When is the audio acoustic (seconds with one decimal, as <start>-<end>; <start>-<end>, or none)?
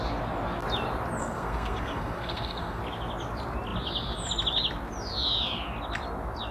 0.0-1.2; 2.8-6.5